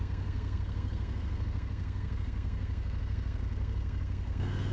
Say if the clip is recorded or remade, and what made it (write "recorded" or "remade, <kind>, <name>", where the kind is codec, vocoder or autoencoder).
remade, codec, SNAC